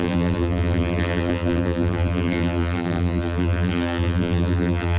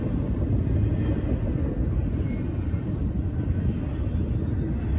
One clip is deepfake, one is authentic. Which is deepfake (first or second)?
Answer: first